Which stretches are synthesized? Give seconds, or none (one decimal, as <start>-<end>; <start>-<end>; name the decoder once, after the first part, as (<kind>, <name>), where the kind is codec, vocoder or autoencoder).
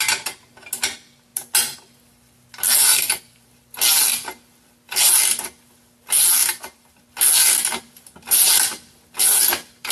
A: 2.9-3.5 (vocoder, BigVGAN v2); 6.4-7.0